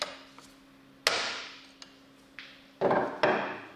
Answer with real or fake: real